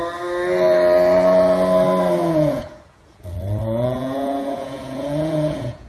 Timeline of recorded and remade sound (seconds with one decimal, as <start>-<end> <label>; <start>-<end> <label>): 0.0-2.2 recorded; 2.2-5.9 remade